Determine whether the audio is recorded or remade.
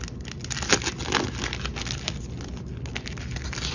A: recorded